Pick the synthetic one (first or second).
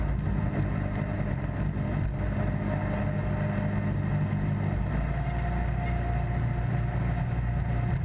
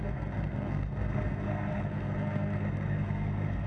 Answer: second